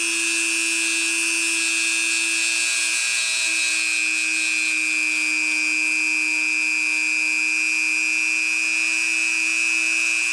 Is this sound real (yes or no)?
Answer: yes